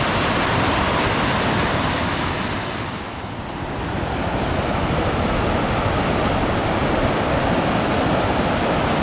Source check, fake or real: real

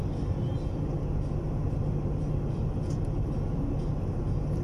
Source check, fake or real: real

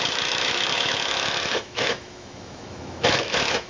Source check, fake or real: fake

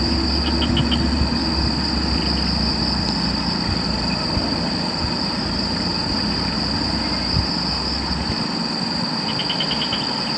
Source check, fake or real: real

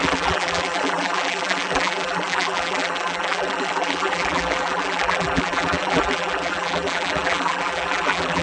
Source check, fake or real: fake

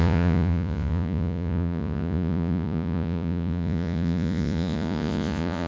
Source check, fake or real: fake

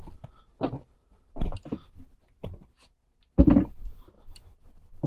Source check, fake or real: real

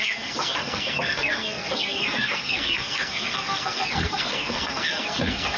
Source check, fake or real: fake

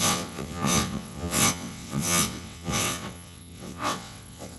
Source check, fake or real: fake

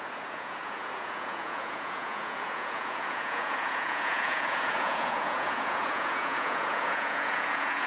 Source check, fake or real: fake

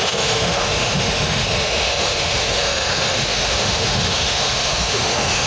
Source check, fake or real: fake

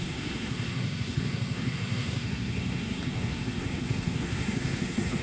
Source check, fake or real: fake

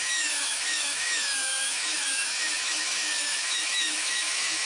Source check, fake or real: fake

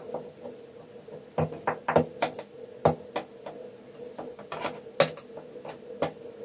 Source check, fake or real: real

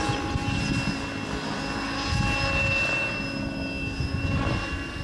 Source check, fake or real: real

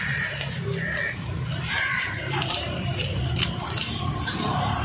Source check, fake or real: fake